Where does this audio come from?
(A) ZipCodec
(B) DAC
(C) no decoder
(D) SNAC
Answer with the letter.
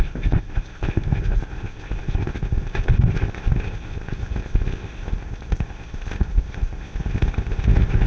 A